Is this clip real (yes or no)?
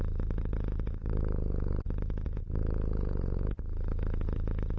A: yes